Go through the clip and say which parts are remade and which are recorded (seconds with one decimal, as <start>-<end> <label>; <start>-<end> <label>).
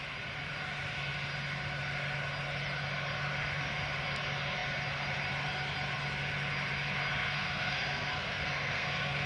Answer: 0.0-7.2 recorded; 7.2-9.3 remade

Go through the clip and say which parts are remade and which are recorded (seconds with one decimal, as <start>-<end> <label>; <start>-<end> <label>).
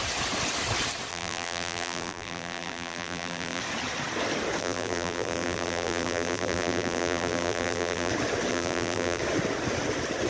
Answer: 0.0-1.1 recorded; 1.1-3.6 remade; 3.6-4.6 recorded; 4.6-8.1 remade; 8.1-8.5 recorded; 8.5-9.2 remade; 9.2-10.3 recorded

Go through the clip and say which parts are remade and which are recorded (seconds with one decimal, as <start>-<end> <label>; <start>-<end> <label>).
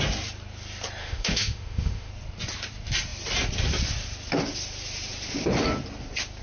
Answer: 0.0-1.0 recorded; 1.0-2.1 remade; 2.1-6.4 recorded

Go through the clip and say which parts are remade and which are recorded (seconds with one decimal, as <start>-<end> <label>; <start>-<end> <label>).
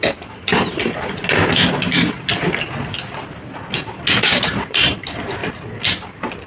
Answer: 0.0-0.5 remade; 0.5-4.2 recorded; 4.2-5.4 remade; 5.4-6.0 recorded; 6.0-6.5 remade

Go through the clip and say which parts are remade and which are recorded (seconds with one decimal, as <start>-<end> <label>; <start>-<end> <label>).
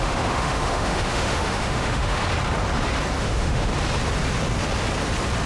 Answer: 0.0-2.2 remade; 2.2-3.2 recorded; 3.2-3.7 remade; 3.7-5.5 recorded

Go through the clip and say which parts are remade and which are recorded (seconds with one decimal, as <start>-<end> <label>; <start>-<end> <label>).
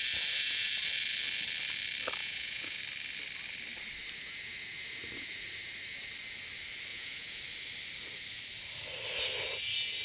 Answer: 0.0-2.2 recorded; 2.2-2.8 remade; 2.8-6.9 recorded; 6.9-7.4 remade; 7.4-10.0 recorded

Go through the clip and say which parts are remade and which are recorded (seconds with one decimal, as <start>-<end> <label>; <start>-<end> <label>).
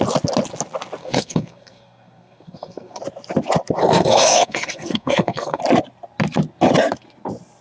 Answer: 0.0-1.0 recorded; 1.0-3.0 remade; 3.0-3.8 recorded; 3.8-5.6 remade; 5.6-7.6 recorded